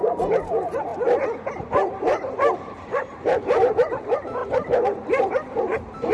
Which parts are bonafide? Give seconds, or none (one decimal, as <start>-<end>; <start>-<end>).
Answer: 0.9-1.5

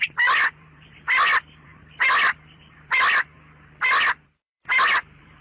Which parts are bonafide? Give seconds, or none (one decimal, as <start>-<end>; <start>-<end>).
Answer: none

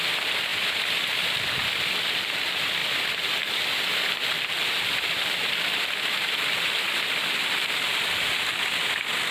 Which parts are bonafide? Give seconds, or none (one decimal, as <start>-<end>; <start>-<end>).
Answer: 0.0-9.3

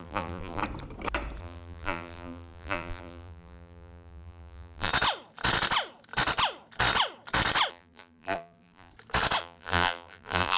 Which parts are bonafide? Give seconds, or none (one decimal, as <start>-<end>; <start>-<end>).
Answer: 0.6-1.4; 4.9-7.7; 8.9-9.4

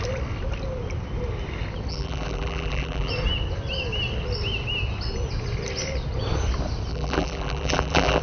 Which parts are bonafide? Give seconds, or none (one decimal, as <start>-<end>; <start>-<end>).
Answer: 0.0-1.9; 3.1-6.9

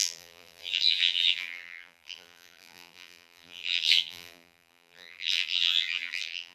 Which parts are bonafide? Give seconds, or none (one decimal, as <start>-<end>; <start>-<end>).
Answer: none

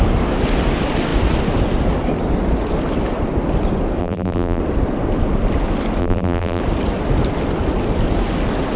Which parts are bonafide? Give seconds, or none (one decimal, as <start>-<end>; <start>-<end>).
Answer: 0.0-4.0; 4.6-6.0; 6.6-8.8